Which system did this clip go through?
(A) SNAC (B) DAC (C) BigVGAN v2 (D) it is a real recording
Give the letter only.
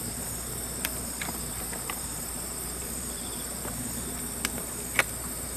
C